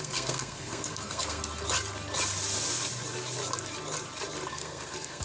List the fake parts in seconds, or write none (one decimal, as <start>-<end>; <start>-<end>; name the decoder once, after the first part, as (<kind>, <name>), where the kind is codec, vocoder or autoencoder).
0.0-1.4 (codec, SNAC); 4.5-5.2